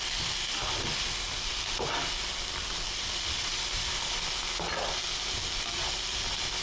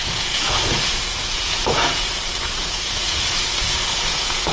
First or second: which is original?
first